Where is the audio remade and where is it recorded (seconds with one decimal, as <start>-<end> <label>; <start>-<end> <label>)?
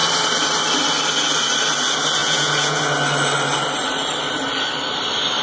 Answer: 0.0-2.2 recorded; 2.2-2.8 remade; 2.8-5.4 recorded